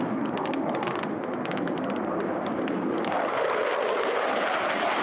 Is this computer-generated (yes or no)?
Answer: no